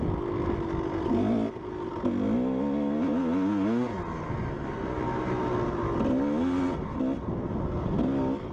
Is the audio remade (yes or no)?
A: no